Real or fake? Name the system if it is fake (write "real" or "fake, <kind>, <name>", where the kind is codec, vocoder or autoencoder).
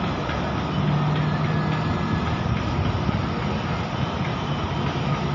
real